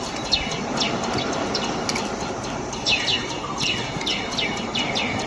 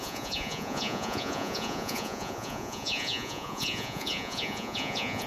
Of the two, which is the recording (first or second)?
first